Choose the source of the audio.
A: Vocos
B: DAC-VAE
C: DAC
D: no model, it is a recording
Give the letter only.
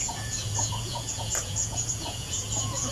A